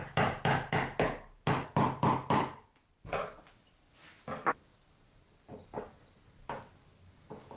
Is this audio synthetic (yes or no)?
no